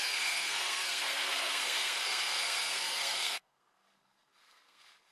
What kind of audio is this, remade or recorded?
remade